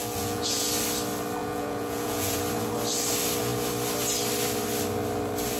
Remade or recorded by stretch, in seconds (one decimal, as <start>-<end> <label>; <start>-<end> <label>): 0.0-0.7 remade; 0.7-1.4 recorded; 1.4-2.4 remade; 2.4-5.6 recorded